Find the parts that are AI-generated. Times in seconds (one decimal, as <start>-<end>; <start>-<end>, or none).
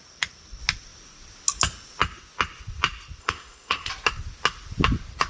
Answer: 3.2-3.9